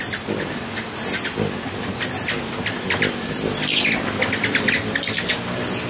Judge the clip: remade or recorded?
recorded